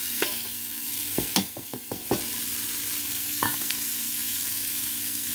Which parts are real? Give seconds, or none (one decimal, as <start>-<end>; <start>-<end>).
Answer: 2.0-3.0

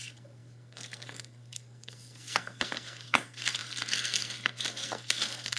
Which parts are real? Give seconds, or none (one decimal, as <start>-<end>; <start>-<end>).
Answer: none

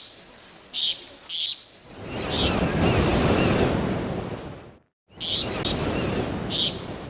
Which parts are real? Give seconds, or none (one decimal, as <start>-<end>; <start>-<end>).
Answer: 0.0-7.1

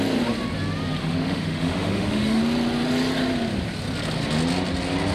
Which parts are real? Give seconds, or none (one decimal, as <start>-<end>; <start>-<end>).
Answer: 0.0-1.0; 2.4-5.1

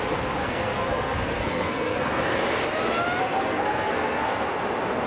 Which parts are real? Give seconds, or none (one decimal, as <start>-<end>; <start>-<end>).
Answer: 0.0-0.4; 2.2-3.2; 4.6-5.1

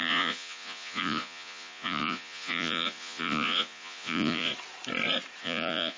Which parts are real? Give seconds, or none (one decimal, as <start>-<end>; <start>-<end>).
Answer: 4.5-5.4